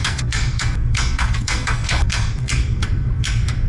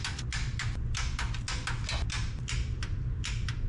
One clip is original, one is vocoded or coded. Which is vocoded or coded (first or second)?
first